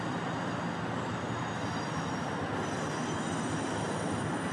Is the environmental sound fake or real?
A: real